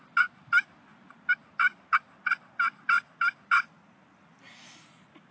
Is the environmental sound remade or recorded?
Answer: recorded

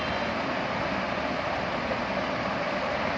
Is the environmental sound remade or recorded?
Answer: recorded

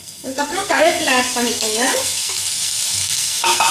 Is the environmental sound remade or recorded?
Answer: remade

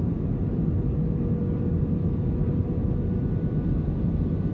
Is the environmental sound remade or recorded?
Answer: recorded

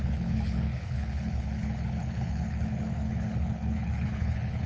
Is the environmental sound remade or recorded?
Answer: remade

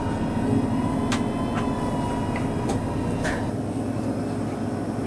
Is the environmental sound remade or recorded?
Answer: recorded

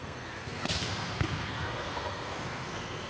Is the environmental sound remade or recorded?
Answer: remade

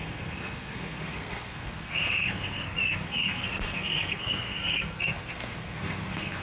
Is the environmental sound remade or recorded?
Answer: remade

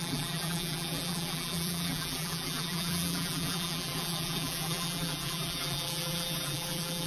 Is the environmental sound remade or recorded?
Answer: remade